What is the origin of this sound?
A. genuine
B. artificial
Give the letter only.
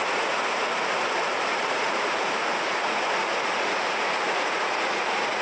B